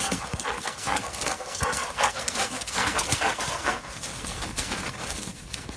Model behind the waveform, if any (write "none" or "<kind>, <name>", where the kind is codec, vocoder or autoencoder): codec, SNAC